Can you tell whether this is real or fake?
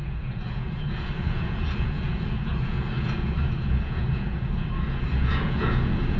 fake